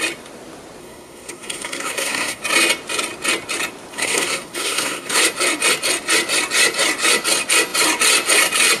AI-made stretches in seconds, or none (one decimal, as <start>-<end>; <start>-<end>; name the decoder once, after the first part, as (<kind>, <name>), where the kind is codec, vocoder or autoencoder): 0.8-2.4 (codec, SNAC); 3.9-5.2